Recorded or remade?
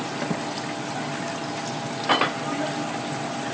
recorded